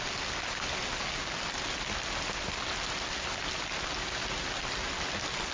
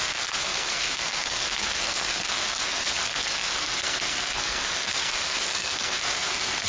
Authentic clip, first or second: first